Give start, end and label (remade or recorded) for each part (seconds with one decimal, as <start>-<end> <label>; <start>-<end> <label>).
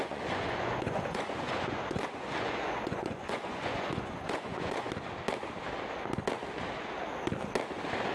0.0-4.9 remade; 4.9-8.1 recorded